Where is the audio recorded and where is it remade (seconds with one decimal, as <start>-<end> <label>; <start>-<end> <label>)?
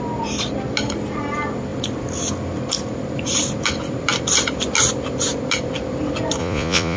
0.0-6.4 recorded; 6.4-7.0 remade